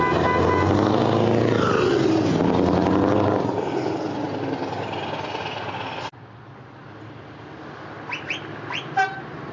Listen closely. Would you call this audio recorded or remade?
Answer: recorded